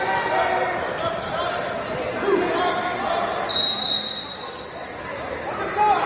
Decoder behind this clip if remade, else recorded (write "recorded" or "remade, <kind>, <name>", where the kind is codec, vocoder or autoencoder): recorded